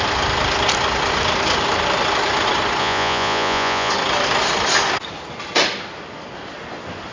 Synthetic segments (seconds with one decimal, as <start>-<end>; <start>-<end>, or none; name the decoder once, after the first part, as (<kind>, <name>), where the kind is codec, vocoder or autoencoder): 2.8-3.9 (vocoder, Vocos)